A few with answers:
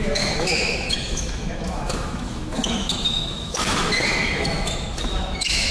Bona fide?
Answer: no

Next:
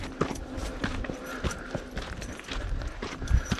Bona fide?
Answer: no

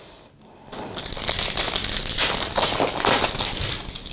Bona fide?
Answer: yes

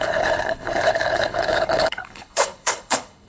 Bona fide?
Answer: no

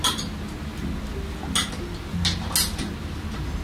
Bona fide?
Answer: yes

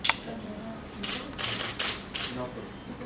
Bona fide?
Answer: yes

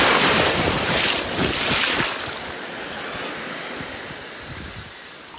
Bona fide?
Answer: yes